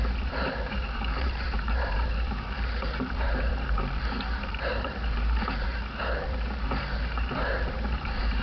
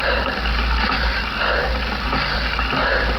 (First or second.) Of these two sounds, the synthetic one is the first